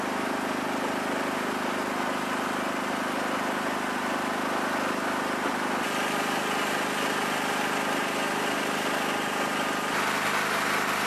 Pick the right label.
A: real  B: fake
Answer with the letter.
A